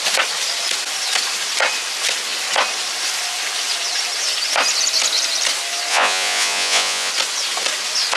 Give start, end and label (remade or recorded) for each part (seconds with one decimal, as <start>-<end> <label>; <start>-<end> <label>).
0.0-5.9 recorded; 5.9-7.1 remade; 7.1-8.2 recorded